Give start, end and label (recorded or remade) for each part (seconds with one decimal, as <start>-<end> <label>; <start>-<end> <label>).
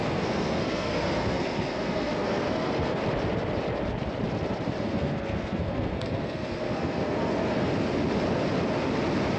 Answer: 0.0-3.0 remade; 3.0-4.8 recorded; 4.8-7.7 remade; 7.7-9.4 recorded